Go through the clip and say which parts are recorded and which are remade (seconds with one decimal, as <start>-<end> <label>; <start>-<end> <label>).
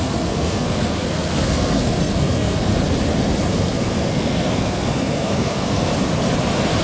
0.0-2.7 remade; 2.7-3.5 recorded; 3.5-5.9 remade; 5.9-6.8 recorded